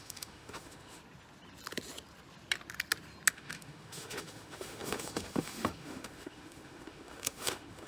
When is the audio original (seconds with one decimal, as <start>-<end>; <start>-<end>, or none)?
1.0-3.3